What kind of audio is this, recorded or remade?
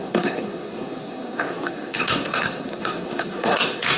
remade